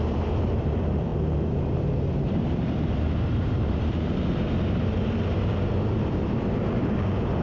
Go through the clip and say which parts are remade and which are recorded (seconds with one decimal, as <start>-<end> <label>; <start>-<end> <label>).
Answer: 0.0-7.4 remade